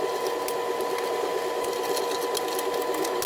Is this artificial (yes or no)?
no